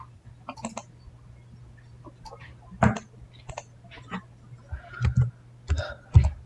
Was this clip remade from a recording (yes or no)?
no